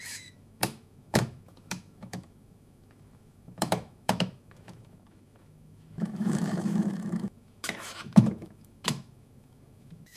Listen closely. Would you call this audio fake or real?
fake